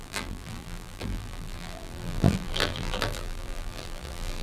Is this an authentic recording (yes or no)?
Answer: no